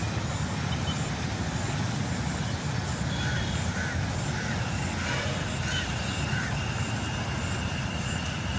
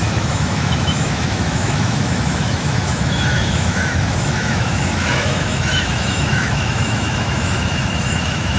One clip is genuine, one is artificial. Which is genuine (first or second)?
first